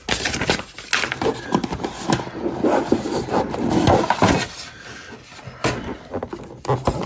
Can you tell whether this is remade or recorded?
recorded